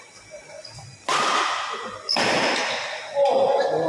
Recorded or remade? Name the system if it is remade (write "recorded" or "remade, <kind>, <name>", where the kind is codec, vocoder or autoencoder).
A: recorded